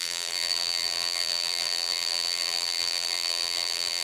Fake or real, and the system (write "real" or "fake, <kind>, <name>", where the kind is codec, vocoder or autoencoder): fake, vocoder, BigVGAN v2